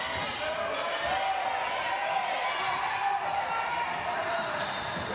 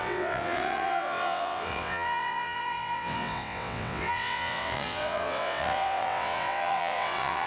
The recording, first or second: first